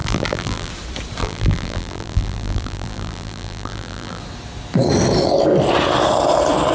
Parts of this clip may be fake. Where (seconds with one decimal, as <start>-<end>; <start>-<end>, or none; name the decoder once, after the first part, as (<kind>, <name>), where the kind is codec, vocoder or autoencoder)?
0.0-0.7 (vocoder, BigVGAN v2); 1.2-4.2